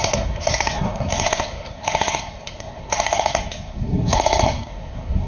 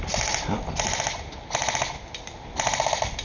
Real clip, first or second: second